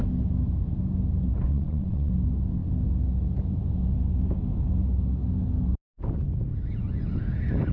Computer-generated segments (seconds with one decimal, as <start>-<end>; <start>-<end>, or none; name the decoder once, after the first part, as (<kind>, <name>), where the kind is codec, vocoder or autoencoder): 1.5-2.1 (vocoder, WaveNeXt)